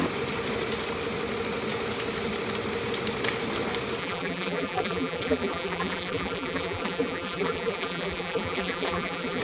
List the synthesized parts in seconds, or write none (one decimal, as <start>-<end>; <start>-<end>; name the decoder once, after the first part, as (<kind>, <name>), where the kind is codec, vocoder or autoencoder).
4.0-9.4 (vocoder, BigVGAN v2)